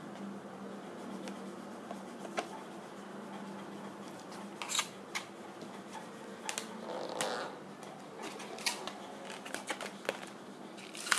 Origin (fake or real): real